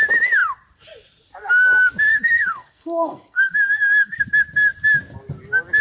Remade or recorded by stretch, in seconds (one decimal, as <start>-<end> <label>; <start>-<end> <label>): 0.0-2.1 recorded; 2.1-4.2 remade; 4.2-5.8 recorded